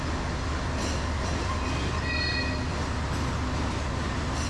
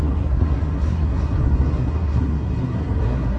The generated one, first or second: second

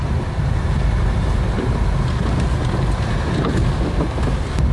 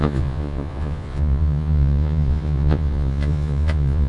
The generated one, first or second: second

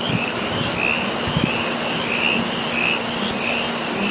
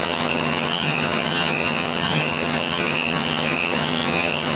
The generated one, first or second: second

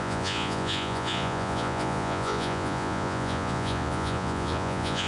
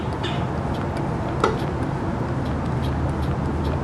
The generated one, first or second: first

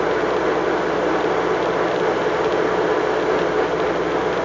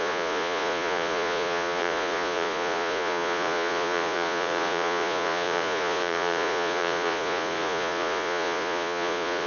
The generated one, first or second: second